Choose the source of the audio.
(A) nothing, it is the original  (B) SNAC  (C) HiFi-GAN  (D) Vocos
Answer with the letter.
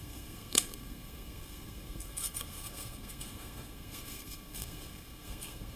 B